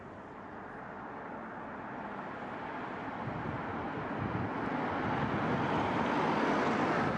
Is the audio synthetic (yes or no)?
no